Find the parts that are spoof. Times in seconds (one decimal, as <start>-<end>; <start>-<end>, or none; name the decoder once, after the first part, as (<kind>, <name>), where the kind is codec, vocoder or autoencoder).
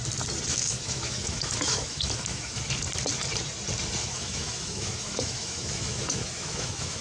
0.5-2.6 (autoencoder, DAC-VAE); 4.0-7.0